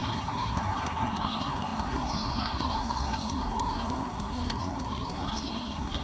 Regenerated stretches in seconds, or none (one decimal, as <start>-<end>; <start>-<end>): 0.0-6.0